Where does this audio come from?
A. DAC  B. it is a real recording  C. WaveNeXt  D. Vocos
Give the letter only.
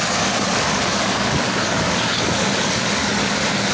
A